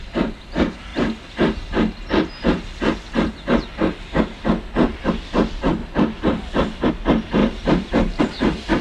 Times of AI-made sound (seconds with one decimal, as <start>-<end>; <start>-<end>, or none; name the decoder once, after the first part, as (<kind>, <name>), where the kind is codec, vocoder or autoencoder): 5.8-6.9 (vocoder, BigVGAN v2); 7.4-8.2